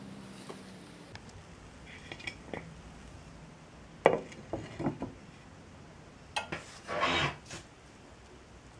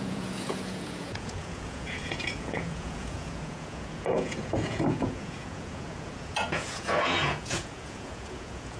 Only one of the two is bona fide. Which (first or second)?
first